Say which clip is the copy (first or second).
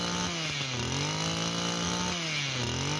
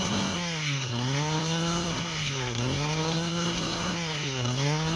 second